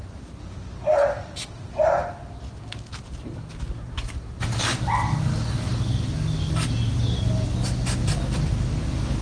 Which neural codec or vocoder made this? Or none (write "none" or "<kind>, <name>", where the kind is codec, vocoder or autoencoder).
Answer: none